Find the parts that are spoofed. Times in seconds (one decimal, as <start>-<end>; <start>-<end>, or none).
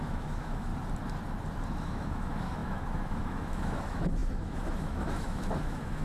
0.0-0.7; 1.7-6.0